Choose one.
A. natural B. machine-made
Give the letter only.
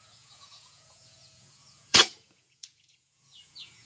B